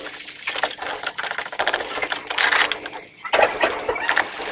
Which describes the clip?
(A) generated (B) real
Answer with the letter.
B